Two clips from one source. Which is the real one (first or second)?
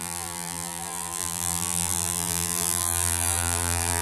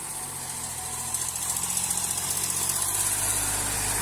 second